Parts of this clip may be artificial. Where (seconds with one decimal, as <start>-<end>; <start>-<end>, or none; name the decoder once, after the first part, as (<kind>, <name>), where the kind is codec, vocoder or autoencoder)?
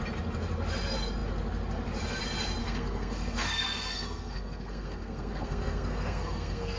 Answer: 2.6-6.8 (codec, SNAC)